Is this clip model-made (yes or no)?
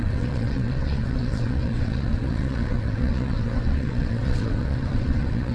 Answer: yes